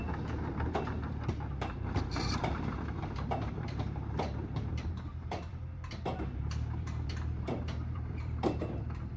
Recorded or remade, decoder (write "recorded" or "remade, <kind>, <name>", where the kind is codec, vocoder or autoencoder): remade, vocoder, BigVGAN v2